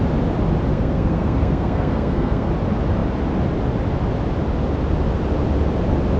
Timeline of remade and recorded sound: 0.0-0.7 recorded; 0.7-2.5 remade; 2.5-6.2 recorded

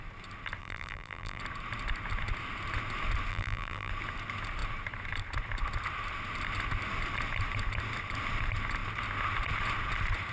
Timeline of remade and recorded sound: 0.0-0.6 recorded; 0.6-1.4 remade; 1.4-3.3 recorded; 3.3-3.9 remade; 3.9-10.3 recorded

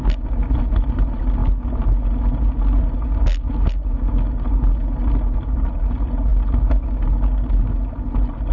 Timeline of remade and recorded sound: 0.0-8.5 recorded

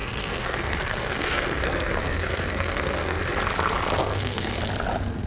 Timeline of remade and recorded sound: 0.0-3.2 remade; 3.2-4.0 recorded; 4.0-4.6 remade; 4.6-5.3 recorded